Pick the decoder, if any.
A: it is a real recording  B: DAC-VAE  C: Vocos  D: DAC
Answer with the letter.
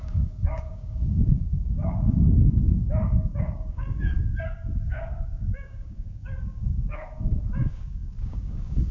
D